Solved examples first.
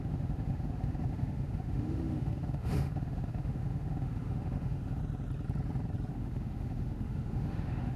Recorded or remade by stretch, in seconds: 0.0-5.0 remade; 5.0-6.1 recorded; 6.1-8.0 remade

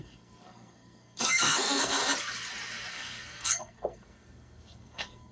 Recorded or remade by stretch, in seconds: 0.0-2.0 remade; 2.0-2.9 recorded; 2.9-5.3 remade

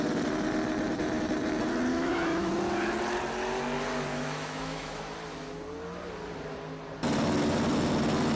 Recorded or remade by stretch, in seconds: 0.0-1.9 recorded; 1.9-2.5 remade; 2.5-4.1 recorded; 4.1-5.0 remade; 5.0-8.4 recorded